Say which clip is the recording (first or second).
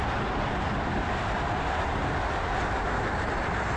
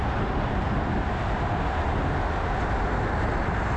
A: second